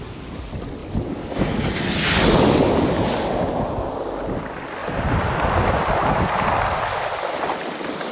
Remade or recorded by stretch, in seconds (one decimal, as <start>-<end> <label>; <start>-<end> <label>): 0.0-8.1 recorded